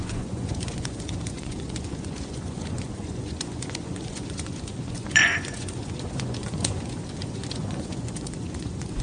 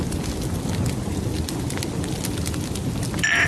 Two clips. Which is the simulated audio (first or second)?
first